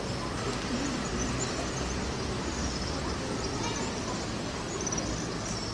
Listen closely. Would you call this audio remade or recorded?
recorded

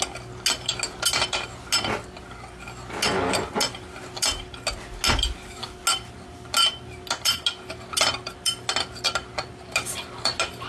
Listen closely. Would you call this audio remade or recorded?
recorded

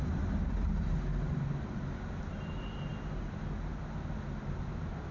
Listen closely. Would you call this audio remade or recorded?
recorded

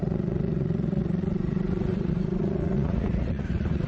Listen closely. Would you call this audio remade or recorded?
remade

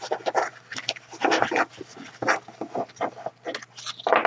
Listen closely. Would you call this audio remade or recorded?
recorded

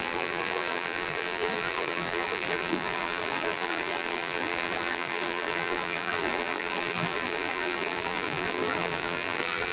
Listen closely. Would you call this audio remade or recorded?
remade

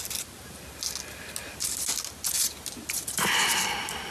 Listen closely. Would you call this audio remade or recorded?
recorded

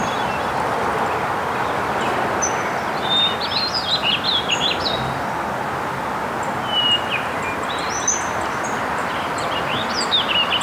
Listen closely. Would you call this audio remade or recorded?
recorded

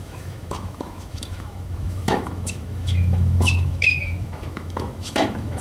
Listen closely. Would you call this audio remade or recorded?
remade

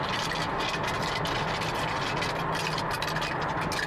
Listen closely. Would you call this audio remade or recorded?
recorded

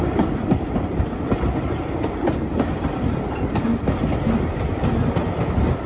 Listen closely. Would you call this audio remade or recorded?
recorded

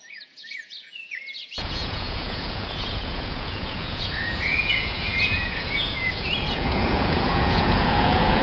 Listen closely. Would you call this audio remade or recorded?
remade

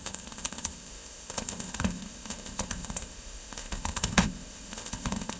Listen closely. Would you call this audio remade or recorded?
remade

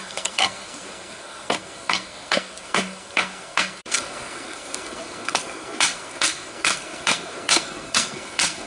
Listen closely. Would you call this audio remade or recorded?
remade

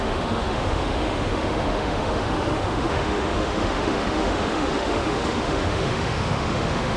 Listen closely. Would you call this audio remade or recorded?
remade